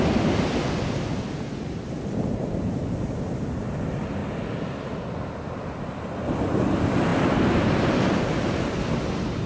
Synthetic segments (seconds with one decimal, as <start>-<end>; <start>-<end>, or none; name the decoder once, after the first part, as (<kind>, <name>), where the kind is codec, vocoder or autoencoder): none